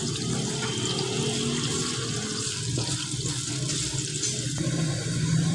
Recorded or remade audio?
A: recorded